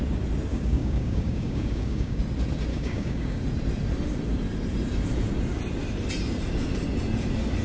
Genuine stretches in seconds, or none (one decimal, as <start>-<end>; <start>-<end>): 0.0-0.5; 2.2-2.7; 3.4-7.6

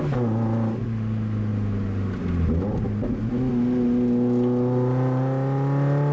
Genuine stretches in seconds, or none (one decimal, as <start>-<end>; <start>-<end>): 0.0-6.1

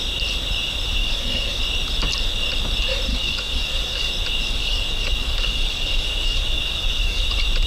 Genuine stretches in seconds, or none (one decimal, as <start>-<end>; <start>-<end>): 0.0-1.0; 1.6-3.1; 4.1-4.6; 7.3-7.7

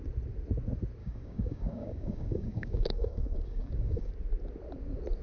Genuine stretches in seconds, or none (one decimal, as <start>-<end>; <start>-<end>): 0.0-1.0; 4.1-5.2